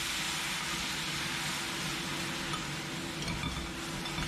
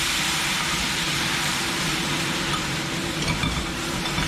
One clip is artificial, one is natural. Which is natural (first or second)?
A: first